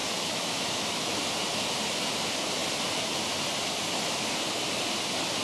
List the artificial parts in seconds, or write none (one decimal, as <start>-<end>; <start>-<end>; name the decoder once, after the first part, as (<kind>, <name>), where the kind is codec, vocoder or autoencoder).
0.0-1.2 (autoencoder, DAC-VAE)